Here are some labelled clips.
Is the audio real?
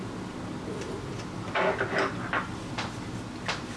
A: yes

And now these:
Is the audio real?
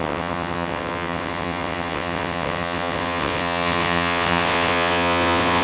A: no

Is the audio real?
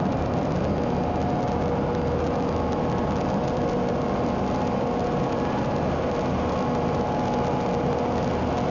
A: yes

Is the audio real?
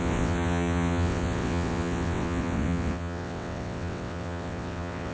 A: no